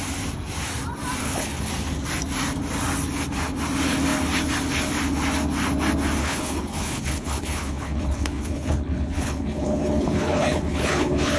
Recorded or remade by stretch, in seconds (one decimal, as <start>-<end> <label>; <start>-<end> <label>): 0.0-1.2 recorded; 1.2-1.7 remade; 1.7-6.2 recorded; 6.2-11.4 remade

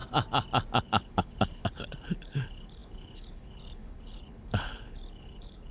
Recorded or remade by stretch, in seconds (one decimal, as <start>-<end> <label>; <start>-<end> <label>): 0.0-0.8 recorded; 0.8-5.7 remade

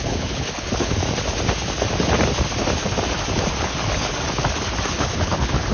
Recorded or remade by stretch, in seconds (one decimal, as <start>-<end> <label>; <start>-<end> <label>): 0.0-1.0 remade; 1.0-3.6 recorded; 3.6-4.1 remade; 4.1-4.9 recorded; 4.9-5.7 remade

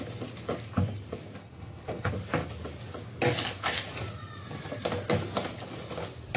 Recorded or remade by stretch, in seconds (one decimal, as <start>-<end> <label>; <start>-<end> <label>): 0.0-1.4 recorded; 1.4-2.1 remade; 2.1-6.4 recorded

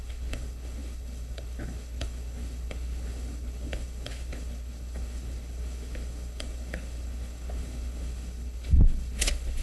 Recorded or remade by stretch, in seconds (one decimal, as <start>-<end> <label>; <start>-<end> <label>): 0.0-9.6 remade

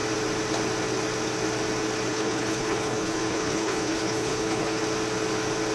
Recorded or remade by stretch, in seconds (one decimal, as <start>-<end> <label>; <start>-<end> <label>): 0.0-2.1 recorded; 2.1-4.8 remade; 4.8-5.7 recorded